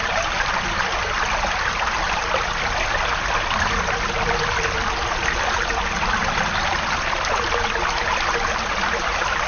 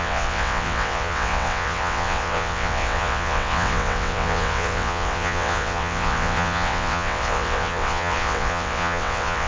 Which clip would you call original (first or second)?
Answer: first